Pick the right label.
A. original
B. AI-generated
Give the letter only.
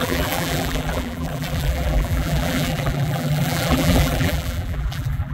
B